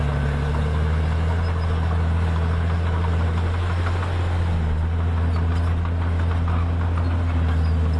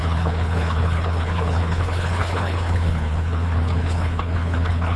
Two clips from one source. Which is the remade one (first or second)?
second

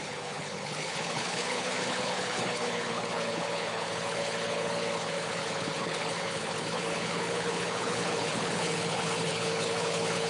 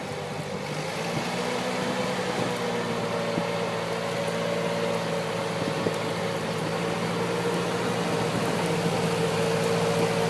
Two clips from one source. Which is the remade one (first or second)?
first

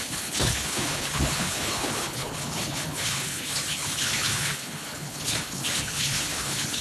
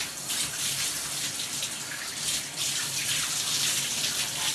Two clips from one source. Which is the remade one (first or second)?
first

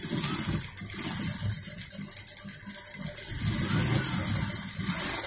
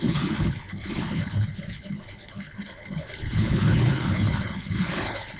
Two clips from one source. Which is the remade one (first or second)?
second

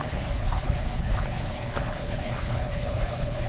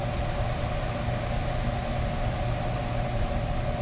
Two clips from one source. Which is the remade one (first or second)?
first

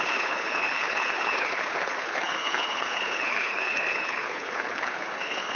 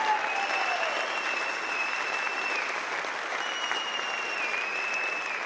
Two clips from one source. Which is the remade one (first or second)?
first